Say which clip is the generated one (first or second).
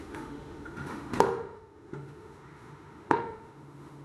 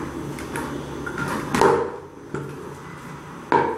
first